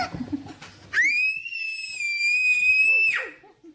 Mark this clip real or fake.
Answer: real